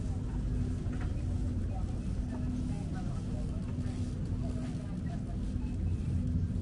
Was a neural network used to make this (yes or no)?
no